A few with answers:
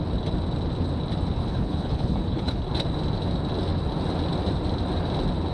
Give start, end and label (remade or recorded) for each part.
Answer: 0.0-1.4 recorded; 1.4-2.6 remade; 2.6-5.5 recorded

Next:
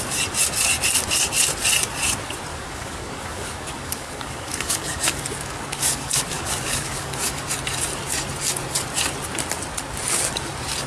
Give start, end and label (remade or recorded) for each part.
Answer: 0.0-2.5 recorded; 2.5-7.4 remade; 7.4-10.9 recorded

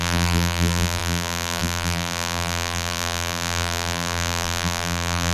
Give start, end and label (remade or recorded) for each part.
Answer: 0.0-5.3 remade

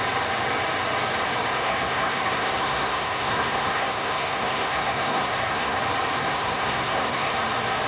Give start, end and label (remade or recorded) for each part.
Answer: 0.0-1.5 recorded; 1.5-5.8 remade; 5.8-6.2 recorded; 6.2-7.3 remade; 7.3-7.9 recorded